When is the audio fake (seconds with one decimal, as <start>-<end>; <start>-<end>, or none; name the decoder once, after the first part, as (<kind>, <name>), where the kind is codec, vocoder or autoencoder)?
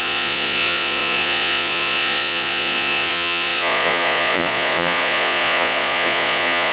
0.0-6.7 (vocoder, Vocos)